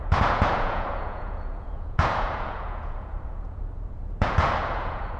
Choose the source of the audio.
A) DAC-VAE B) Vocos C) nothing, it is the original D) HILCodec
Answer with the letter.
B